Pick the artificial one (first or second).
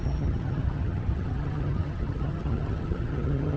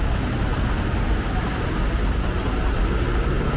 first